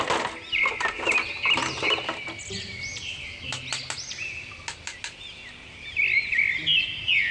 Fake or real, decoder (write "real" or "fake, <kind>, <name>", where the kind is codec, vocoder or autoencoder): real